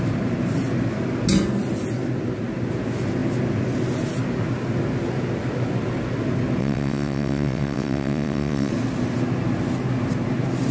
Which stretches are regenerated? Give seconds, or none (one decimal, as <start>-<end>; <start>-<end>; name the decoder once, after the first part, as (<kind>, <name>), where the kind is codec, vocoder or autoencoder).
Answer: 6.6-8.7 (vocoder, WaveNeXt)